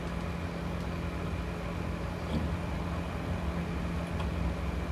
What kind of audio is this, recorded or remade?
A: recorded